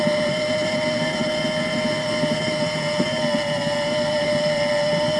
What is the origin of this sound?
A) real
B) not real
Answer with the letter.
A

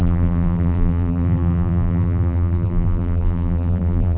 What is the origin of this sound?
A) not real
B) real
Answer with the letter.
A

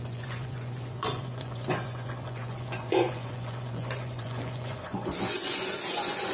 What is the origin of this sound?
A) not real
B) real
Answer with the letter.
A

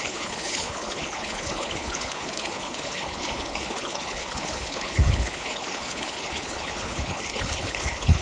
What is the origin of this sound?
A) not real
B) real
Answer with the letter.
A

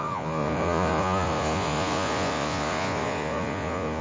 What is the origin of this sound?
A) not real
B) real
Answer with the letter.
A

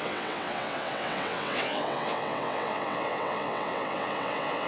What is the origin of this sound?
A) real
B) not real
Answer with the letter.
B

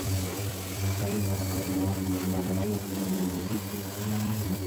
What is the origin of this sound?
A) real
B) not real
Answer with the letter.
B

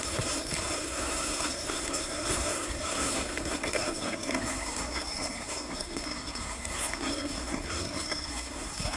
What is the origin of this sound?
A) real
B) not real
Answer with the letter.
B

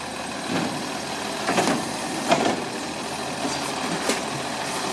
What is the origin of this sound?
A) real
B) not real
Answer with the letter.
A